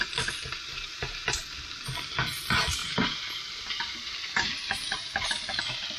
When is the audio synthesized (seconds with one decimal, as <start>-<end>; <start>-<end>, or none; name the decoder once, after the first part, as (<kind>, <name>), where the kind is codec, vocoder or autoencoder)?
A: 0.7-1.4 (vocoder, BigVGAN v2); 2.8-5.6